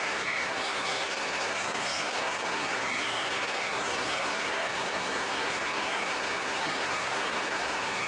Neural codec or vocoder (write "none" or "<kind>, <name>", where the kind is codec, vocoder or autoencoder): codec, SNAC